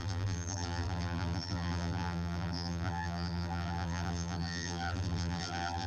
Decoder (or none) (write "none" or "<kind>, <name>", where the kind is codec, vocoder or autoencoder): vocoder, BigVGAN v2